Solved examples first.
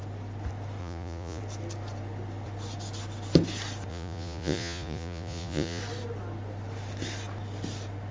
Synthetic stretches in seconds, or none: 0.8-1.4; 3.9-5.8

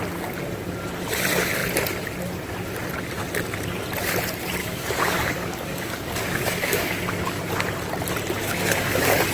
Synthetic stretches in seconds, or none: 4.6-7.4; 8.4-9.3

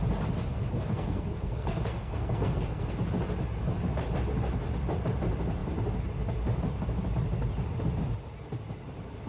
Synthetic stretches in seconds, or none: 0.5-3.0

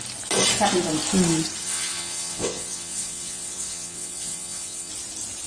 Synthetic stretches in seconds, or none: 1.6-4.9

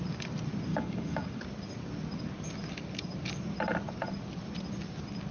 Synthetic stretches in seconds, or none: 0.7-1.4